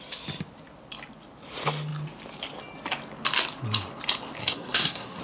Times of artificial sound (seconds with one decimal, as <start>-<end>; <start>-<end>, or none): 4.4-5.2